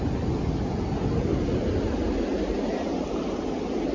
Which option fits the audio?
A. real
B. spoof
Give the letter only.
A